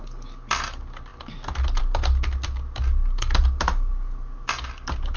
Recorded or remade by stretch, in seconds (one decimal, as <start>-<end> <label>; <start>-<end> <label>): 0.0-5.2 recorded

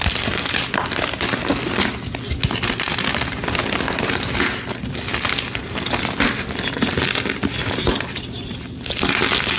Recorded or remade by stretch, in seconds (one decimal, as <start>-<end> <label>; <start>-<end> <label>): 0.0-9.6 recorded

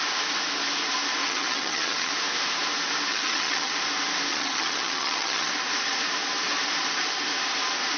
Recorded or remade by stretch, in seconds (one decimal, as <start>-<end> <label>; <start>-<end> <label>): 0.0-1.2 recorded; 1.2-2.1 remade; 2.1-3.1 recorded; 3.1-3.7 remade; 3.7-4.3 recorded; 4.3-5.5 remade; 5.5-8.0 recorded

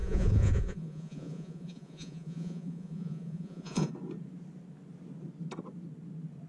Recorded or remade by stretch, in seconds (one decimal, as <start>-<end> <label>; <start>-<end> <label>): 0.0-3.9 remade; 3.9-6.5 recorded

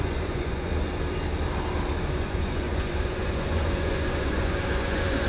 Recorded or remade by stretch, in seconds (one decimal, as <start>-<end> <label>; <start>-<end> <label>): 0.0-0.7 remade; 0.7-2.1 recorded; 2.1-5.3 remade

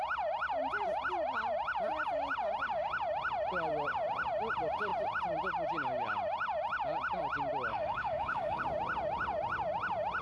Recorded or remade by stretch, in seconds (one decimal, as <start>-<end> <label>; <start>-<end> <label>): 0.0-7.7 recorded; 7.7-8.6 remade; 8.6-10.2 recorded